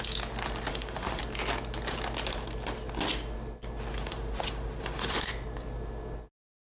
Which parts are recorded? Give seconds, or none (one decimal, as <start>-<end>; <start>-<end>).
0.0-0.7; 1.2-3.9; 5.3-6.7